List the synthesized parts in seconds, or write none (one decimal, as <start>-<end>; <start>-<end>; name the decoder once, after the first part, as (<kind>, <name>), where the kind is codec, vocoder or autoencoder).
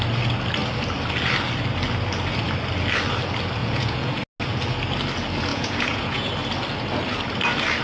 3.6-4.2 (vocoder, Vocos); 5.5-6.3